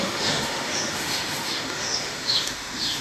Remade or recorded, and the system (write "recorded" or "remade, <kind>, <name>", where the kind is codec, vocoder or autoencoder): remade, autoencoder, DAC-VAE